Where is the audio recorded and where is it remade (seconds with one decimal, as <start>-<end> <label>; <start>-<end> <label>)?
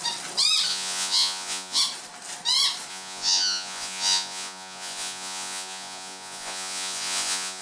0.0-0.7 recorded; 0.7-1.8 remade; 1.8-2.9 recorded; 2.9-7.6 remade